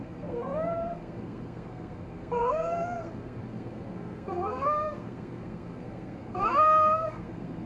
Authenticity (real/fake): fake